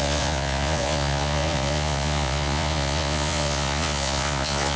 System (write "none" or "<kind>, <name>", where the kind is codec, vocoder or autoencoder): vocoder, Vocos